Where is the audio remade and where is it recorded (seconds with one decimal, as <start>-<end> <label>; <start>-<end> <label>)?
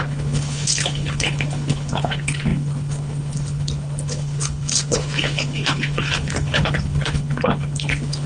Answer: 0.0-8.3 remade